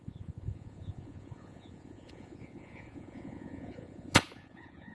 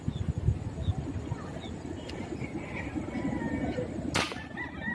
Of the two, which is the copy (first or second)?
first